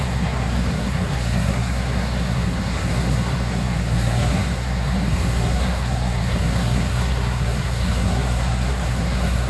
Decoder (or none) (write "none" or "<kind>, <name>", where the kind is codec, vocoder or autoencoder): codec, SNAC